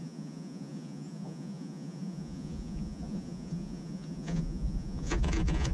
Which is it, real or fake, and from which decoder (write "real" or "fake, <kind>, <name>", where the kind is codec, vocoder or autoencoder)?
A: fake, vocoder, Vocos